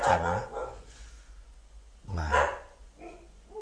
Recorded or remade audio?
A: remade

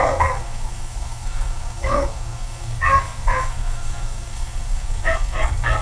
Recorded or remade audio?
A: remade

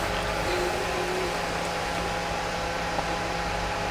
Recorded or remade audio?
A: recorded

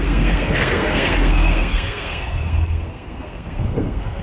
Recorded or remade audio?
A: remade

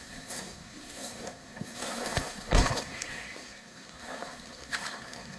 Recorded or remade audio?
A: remade